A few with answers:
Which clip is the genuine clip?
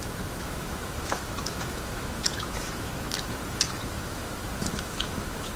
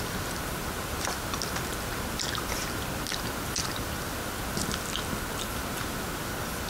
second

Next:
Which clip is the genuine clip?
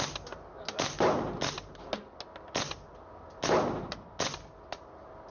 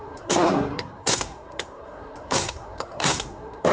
first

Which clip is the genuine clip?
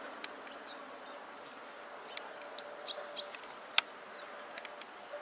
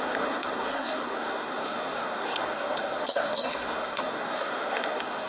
first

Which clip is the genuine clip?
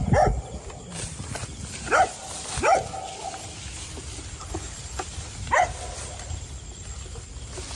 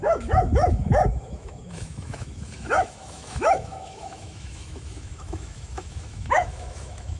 first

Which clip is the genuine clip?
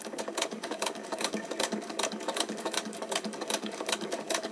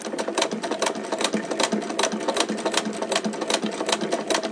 second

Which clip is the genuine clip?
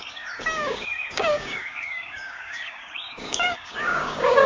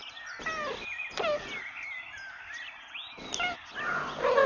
second